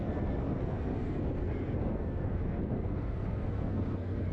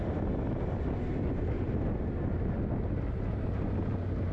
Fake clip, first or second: first